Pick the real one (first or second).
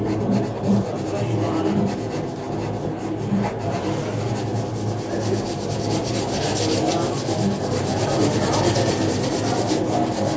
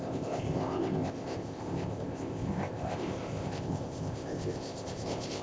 first